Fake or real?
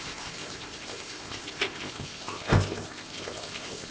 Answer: fake